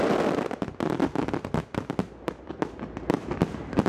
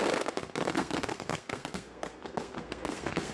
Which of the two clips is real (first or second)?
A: first